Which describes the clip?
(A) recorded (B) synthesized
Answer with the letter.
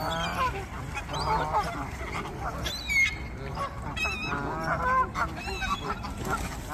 A